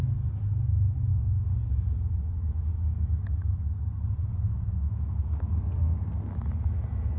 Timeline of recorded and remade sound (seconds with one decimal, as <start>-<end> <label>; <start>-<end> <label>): 0.0-1.1 recorded; 1.1-1.5 remade; 1.5-4.3 recorded; 4.3-6.3 remade; 6.3-7.2 recorded